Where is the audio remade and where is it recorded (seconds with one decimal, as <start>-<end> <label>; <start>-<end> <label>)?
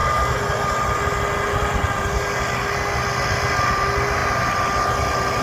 0.0-5.4 recorded